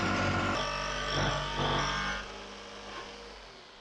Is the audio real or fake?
real